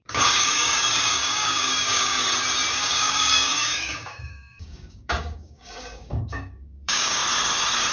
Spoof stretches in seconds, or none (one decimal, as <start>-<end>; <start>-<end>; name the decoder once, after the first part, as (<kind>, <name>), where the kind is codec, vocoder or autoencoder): 0.0-2.2 (codec, DAC); 2.7-7.2